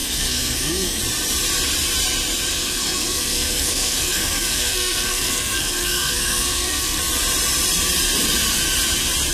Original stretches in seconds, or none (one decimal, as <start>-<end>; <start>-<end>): 1.0-2.5; 7.0-9.3